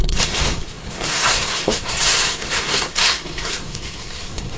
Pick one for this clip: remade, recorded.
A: remade